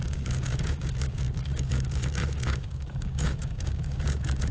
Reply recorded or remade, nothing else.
remade